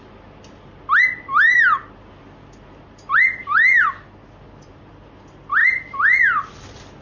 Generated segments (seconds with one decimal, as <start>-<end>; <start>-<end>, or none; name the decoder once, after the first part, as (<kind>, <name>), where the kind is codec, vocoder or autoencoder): none